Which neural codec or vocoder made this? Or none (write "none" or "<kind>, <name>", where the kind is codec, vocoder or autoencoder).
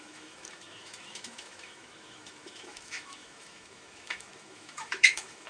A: autoencoder, DAC-VAE